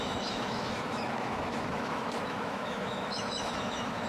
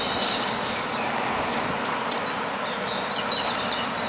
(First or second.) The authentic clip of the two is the second